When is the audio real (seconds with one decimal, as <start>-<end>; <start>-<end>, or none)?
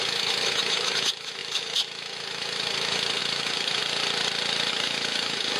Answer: 3.8-4.7